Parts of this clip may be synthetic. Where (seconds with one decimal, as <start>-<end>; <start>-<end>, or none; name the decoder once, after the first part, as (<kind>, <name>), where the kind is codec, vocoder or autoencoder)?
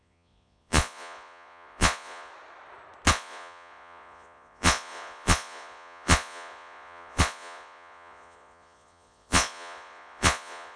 0.0-2.3 (vocoder, Vocos); 3.1-10.8